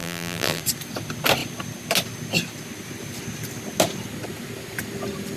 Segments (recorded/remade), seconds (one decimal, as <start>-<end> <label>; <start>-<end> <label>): 0.0-0.6 remade; 0.6-5.4 recorded